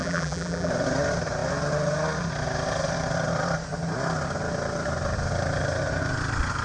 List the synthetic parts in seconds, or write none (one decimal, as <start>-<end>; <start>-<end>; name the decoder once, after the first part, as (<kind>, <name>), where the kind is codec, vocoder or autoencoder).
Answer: 0.0-0.7 (vocoder, BigVGAN v2)